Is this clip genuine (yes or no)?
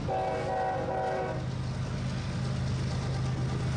yes